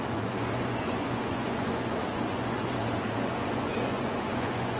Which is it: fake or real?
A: fake